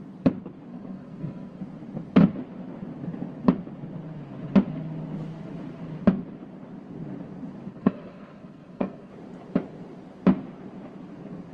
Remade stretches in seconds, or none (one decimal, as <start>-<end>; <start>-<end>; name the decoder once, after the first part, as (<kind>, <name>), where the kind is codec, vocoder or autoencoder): 0.7-1.6 (codec, SNAC); 7.7-9.1

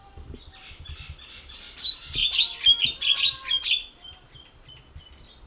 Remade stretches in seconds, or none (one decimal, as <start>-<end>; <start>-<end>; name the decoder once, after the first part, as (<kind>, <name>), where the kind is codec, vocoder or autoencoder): none

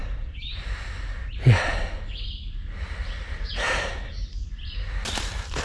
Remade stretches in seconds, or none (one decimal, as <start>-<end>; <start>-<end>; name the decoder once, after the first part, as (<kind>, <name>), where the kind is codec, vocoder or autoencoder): none

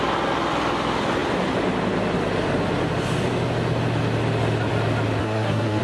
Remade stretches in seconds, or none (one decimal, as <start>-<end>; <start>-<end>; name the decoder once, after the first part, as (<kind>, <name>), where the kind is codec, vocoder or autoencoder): 5.2-5.8 (codec, SNAC)

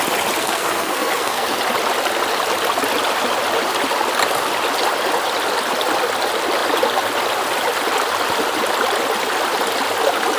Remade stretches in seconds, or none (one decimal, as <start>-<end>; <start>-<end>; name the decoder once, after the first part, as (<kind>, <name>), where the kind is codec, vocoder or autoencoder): 0.4-1.6 (codec, SNAC)

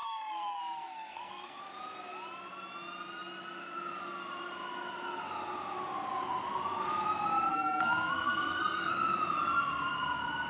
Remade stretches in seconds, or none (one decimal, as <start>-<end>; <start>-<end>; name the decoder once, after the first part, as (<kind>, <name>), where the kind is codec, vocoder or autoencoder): 0.0-1.6 (codec, SNAC); 7.5-8.9